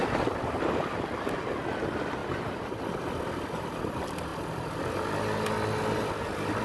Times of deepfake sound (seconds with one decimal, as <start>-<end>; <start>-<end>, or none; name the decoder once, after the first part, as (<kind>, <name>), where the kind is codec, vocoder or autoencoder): 2.2-2.8 (vocoder, BigVGAN v2)